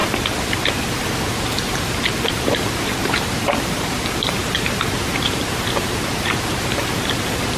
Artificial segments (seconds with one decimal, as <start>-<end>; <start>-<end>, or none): 2.8-7.6